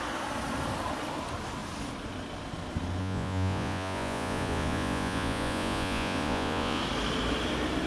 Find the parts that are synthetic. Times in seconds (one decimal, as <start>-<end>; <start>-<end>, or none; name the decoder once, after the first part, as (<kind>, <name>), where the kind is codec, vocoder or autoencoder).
3.0-6.8 (vocoder, Vocos)